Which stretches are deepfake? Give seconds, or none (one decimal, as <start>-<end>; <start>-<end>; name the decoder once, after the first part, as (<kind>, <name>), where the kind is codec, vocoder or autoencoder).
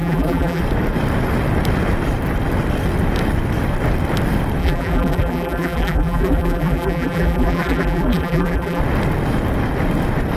0.0-0.6 (vocoder, BigVGAN v2); 4.6-8.8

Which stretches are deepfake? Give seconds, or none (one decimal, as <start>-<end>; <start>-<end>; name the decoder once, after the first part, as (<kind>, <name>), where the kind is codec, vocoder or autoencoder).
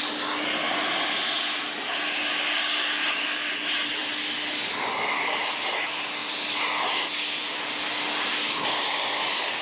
2.3-3.5 (codec, DAC); 8.4-9.6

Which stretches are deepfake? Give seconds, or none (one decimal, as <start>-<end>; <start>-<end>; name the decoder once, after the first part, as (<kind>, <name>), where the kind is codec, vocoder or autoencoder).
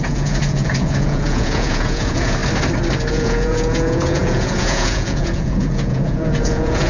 0.0-2.4 (vocoder, Vocos); 3.1-6.9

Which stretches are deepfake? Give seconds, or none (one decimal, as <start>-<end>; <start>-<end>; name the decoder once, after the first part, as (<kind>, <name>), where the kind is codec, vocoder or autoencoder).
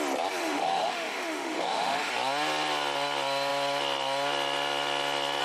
0.4-2.1 (autoencoder, DAC-VAE)